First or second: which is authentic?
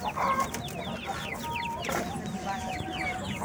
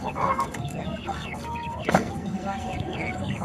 first